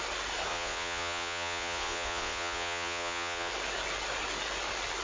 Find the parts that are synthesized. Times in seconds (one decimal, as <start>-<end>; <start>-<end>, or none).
0.5-3.5